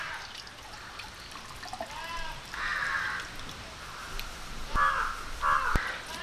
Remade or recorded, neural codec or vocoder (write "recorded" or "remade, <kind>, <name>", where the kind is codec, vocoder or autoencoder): recorded